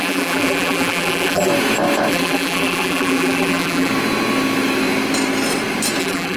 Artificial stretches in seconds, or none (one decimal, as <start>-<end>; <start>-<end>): 0.0-1.5; 2.1-3.9; 6.0-6.4